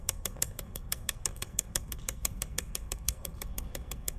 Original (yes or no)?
no